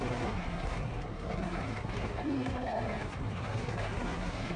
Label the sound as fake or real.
fake